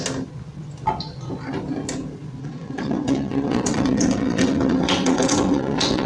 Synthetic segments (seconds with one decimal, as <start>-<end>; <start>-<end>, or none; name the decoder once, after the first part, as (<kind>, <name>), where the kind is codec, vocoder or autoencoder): 2.4-6.1 (vocoder, WaveNeXt)